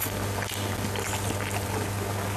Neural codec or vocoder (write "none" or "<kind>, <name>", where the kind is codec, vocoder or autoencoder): none